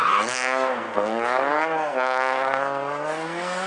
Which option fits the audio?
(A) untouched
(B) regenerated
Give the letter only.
B